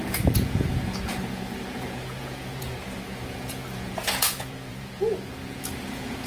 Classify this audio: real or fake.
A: fake